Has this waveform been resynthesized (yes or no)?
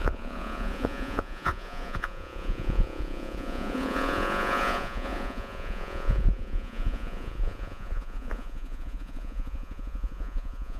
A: yes